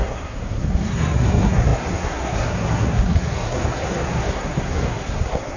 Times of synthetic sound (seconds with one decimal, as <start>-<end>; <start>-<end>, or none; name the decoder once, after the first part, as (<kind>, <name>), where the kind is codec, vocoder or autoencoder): 0.0-5.6 (codec, SNAC)